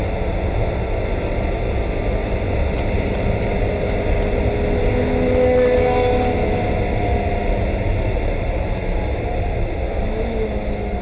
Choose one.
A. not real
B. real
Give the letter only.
B